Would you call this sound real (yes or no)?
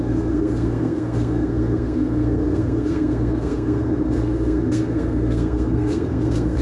no